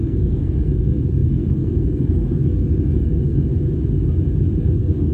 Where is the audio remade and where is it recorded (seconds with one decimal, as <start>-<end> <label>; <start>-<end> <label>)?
0.0-3.5 remade; 3.5-4.6 recorded; 4.6-5.1 remade

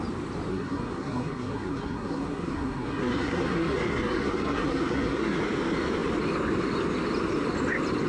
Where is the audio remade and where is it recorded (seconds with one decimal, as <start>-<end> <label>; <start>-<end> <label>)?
0.0-0.5 recorded; 0.5-5.4 remade; 5.4-8.1 recorded

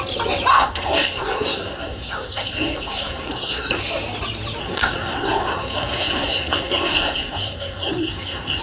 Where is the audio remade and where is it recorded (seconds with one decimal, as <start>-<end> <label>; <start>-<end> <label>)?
0.0-0.5 recorded; 0.5-3.8 remade; 3.8-4.6 recorded; 4.6-8.6 remade

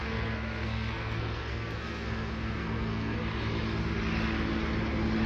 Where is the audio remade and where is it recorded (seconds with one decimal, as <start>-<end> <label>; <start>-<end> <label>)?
0.0-3.2 remade; 3.2-5.3 recorded

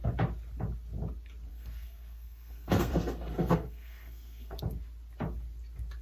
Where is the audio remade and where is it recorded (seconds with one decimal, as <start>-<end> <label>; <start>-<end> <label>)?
0.0-1.5 recorded; 1.5-4.6 remade; 4.6-6.0 recorded

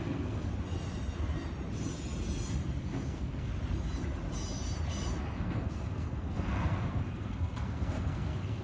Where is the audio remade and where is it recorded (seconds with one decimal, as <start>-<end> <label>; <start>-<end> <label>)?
0.0-0.5 remade; 0.5-2.8 recorded; 2.8-3.5 remade; 3.5-5.2 recorded; 5.2-8.6 remade

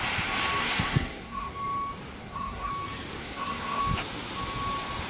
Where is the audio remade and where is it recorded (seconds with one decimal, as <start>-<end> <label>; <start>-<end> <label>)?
0.0-0.6 recorded; 0.6-1.5 remade; 1.5-2.2 recorded; 2.2-2.7 remade; 2.7-3.2 recorded; 3.2-3.8 remade; 3.8-5.1 recorded